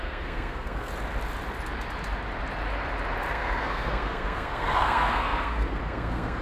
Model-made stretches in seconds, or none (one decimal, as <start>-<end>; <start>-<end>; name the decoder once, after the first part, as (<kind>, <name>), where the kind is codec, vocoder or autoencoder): 0.0-0.9 (codec, SNAC); 3.3-6.4

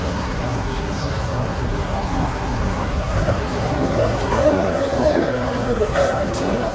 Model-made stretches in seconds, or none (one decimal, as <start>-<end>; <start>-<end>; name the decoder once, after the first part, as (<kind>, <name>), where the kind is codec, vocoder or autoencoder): 0.0-6.7 (codec, SNAC)

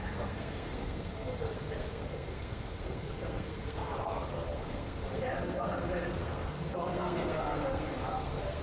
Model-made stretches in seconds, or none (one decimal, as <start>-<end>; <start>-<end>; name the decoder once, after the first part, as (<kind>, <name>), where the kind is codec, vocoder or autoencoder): 0.0-8.6 (codec, SNAC)

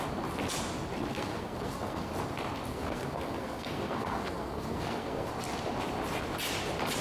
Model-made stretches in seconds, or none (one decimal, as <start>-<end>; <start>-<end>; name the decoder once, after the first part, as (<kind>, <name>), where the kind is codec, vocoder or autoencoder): 1.1-2.1 (codec, SNAC); 2.7-5.3

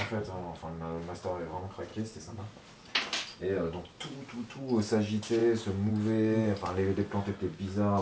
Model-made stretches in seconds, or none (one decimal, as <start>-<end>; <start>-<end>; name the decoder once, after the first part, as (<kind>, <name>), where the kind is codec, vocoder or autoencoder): none

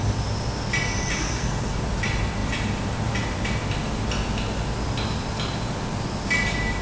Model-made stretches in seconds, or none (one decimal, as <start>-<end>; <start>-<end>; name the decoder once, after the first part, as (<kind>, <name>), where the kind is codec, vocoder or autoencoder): 1.2-1.8 (codec, SNAC)

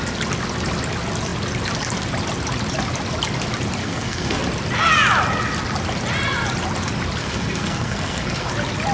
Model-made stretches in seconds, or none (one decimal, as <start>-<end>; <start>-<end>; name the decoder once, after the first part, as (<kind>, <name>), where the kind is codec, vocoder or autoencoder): 3.8-4.4 (codec, SNAC); 7.2-8.5

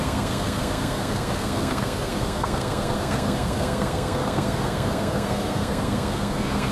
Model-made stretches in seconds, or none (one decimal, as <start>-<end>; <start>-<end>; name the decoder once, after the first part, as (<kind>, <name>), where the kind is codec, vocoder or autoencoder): 0.0-6.7 (codec, SNAC)